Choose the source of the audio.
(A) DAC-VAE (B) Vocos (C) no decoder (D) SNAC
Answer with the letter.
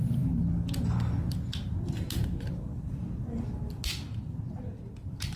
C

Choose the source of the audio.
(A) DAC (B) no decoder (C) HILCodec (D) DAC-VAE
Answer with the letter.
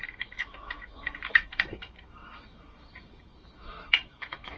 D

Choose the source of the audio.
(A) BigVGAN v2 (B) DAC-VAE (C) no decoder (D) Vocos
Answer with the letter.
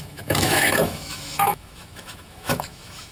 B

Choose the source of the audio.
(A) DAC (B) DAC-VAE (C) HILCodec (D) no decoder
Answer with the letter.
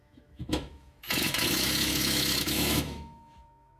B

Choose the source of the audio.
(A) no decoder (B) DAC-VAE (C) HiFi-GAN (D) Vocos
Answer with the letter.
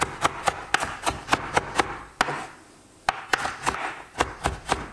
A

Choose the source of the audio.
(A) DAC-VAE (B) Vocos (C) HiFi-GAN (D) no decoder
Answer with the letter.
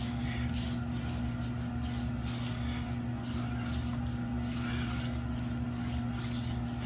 D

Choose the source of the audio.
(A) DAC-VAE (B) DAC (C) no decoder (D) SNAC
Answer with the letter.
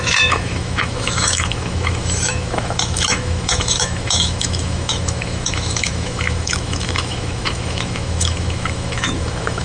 A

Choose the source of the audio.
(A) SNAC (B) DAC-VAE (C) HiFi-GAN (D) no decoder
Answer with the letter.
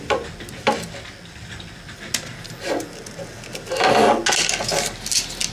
D